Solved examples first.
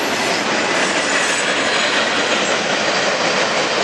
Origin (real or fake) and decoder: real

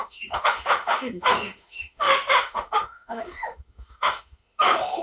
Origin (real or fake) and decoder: fake, autoencoder, DAC-VAE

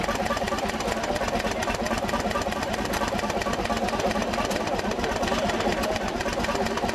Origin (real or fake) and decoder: real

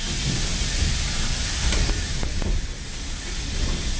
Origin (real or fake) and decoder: real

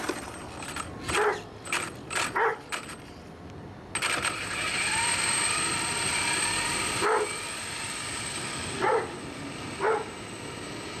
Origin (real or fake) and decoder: real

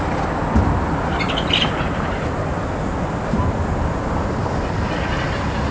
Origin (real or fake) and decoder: real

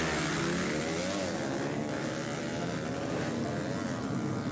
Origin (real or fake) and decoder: real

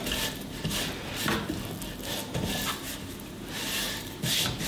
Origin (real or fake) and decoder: real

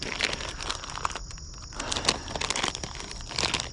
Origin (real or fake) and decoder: real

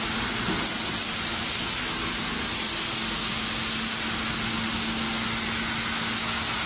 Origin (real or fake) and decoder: real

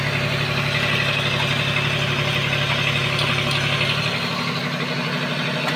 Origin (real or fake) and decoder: real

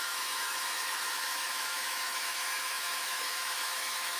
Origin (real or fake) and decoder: fake, autoencoder, DAC-VAE